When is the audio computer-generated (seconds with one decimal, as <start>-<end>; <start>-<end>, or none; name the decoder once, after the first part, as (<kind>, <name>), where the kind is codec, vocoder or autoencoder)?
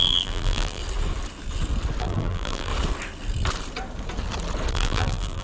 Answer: 0.0-0.8 (vocoder, BigVGAN v2); 2.0-2.7; 4.7-5.4